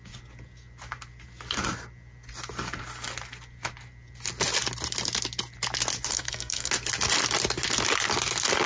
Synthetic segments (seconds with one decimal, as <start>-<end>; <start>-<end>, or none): 6.1-6.7